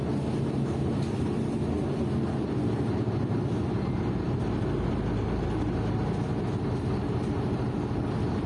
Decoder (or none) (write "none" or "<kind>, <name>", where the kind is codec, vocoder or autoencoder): none